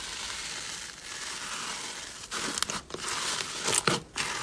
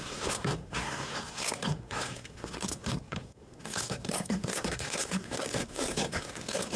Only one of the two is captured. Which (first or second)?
first